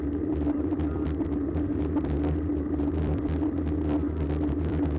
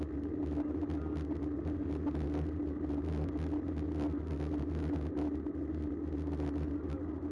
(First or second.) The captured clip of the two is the second